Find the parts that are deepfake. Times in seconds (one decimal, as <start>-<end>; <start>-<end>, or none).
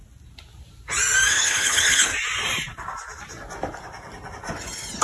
1.3-2.1